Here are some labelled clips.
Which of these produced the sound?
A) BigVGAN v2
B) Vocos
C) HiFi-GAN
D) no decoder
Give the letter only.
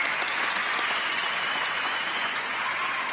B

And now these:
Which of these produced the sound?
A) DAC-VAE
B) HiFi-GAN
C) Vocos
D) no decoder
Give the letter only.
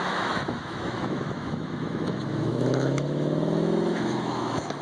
A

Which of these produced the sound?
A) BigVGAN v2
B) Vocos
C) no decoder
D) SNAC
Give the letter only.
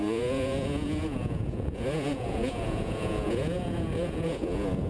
B